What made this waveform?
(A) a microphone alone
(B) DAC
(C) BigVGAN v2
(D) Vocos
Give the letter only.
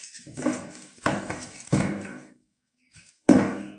B